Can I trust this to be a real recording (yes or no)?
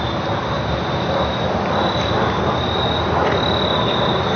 yes